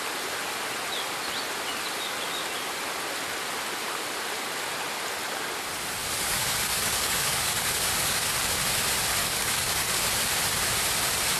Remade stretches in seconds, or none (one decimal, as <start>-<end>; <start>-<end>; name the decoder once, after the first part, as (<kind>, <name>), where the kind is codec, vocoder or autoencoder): 6.0-8.6 (codec, DAC); 9.2-10.0